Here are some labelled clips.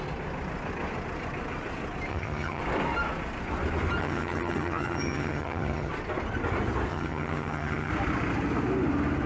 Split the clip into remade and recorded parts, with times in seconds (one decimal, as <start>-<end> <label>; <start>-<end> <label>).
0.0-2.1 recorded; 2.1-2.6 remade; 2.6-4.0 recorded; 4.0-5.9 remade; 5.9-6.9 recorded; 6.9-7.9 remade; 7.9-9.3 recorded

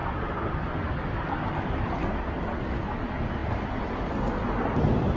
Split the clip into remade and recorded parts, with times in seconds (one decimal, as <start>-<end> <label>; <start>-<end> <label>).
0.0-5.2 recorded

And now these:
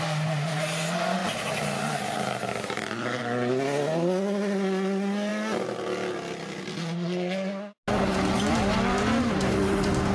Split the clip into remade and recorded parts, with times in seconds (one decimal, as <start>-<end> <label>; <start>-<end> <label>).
0.0-10.1 recorded